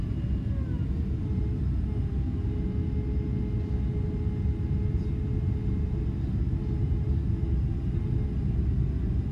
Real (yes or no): yes